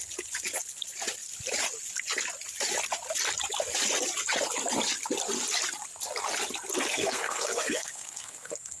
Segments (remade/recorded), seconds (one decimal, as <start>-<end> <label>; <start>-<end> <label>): 0.0-6.9 recorded; 6.9-8.8 remade